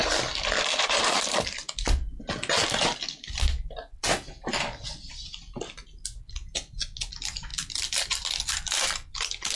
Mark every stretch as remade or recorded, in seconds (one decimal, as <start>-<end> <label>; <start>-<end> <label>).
0.0-9.6 recorded